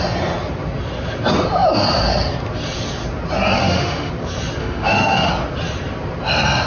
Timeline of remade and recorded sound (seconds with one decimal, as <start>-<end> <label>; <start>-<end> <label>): 0.0-3.6 recorded; 3.6-4.1 remade; 4.1-4.6 recorded; 4.6-5.3 remade; 5.3-6.7 recorded